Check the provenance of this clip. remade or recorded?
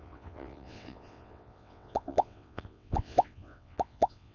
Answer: remade